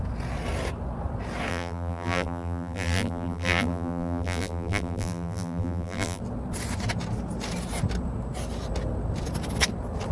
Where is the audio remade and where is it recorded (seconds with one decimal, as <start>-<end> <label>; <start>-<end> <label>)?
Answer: 0.0-1.5 recorded; 1.5-6.2 remade; 6.2-10.1 recorded